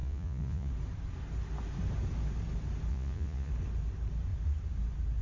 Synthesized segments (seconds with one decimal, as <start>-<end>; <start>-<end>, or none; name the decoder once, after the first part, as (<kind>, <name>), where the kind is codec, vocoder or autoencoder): 0.0-0.7 (vocoder, Vocos); 2.9-3.5